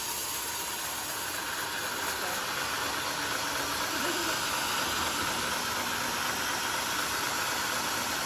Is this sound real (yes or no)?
yes